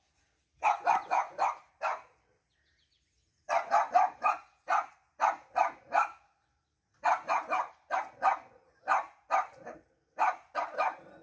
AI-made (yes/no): no